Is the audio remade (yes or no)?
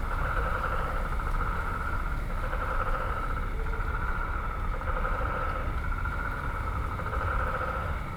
no